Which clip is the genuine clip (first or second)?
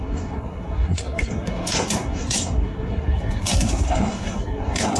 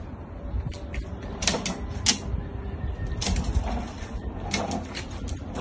second